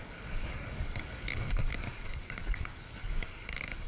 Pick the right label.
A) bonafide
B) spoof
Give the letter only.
B